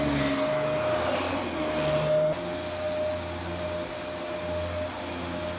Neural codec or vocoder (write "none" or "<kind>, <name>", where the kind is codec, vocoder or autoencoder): none